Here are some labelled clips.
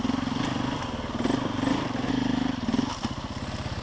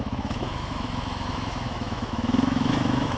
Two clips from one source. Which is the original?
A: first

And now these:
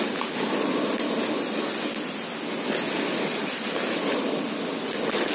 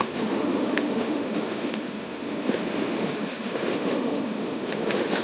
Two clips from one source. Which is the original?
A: first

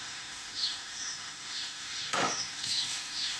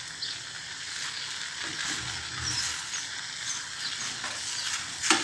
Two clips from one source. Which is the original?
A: second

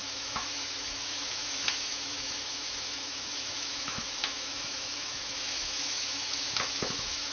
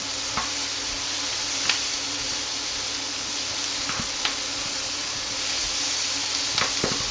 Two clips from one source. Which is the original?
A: second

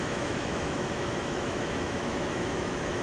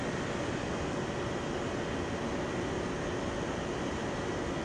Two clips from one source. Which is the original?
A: second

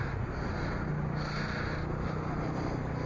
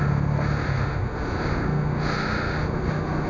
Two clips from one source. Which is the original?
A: first